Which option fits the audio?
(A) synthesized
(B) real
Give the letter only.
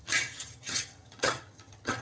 A